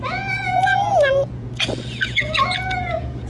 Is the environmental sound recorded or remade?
remade